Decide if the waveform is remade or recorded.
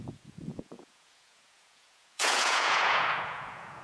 remade